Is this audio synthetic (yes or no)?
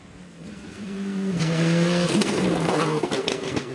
yes